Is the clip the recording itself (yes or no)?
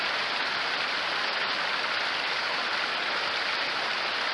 yes